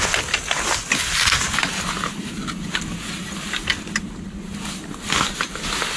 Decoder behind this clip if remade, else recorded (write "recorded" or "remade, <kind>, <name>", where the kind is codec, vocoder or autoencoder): recorded